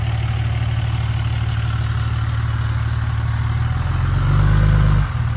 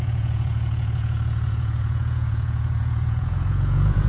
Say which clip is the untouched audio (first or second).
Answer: first